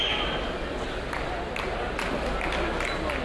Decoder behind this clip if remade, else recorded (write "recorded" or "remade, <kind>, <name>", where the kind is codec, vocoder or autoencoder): recorded